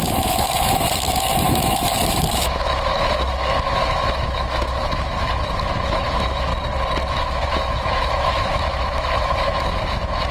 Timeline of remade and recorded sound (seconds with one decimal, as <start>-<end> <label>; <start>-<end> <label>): 0.0-6.5 remade; 6.5-7.1 recorded; 7.1-10.3 remade